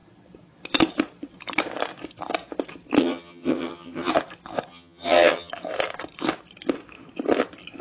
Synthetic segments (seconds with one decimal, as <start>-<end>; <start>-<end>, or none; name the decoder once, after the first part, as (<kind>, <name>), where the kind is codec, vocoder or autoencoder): 3.0-4.1 (vocoder, HiFi-GAN); 4.7-5.5